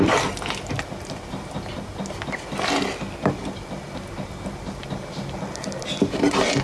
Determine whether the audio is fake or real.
real